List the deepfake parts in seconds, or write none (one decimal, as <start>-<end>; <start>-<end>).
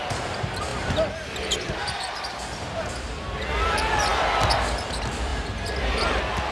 0.7-2.9